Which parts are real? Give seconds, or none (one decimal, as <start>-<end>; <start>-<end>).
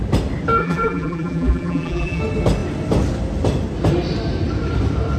0.0-0.6; 2.2-5.2